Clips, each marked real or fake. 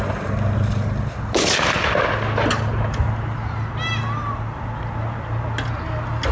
real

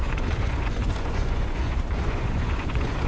fake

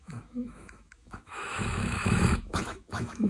fake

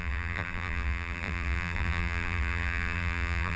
fake